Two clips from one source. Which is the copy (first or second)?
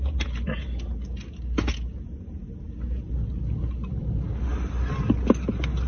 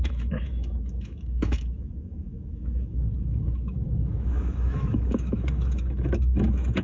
second